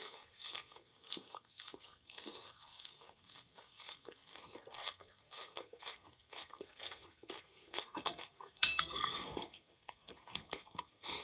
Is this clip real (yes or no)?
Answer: no